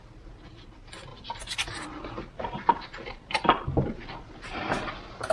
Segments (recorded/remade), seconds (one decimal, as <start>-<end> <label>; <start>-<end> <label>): 0.0-5.3 recorded